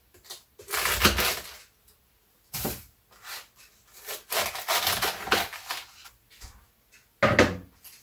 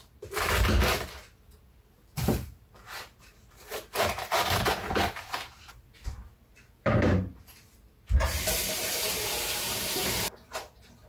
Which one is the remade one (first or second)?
second